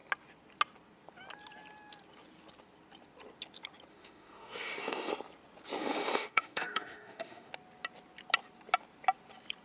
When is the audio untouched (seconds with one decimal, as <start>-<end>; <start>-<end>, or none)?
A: 0.0-3.9; 5.1-5.8; 7.5-9.6

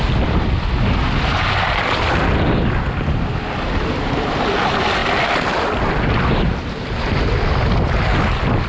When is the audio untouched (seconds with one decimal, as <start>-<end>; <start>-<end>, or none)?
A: 0.0-8.7

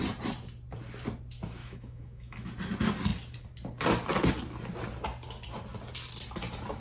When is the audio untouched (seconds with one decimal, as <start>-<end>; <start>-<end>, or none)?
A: 0.0-1.6; 2.5-6.8

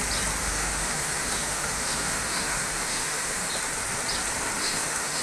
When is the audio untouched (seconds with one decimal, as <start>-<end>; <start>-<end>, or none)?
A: 0.0-0.4; 3.5-4.6

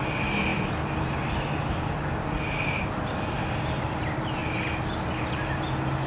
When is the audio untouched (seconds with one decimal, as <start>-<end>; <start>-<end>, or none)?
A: 0.0-6.1

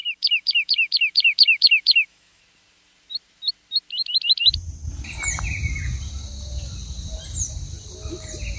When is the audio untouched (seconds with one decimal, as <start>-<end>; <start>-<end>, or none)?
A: 2.4-8.6

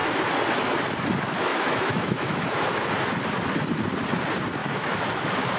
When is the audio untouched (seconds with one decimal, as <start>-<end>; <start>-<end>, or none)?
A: 0.0-1.5; 2.9-4.6